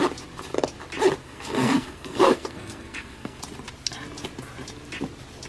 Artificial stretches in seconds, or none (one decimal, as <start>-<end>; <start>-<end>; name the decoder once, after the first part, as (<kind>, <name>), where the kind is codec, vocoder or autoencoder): 1.2-3.4 (codec, SNAC)